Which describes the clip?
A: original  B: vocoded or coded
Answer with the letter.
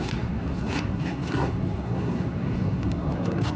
B